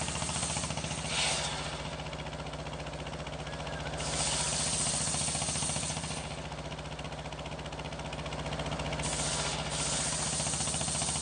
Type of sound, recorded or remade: recorded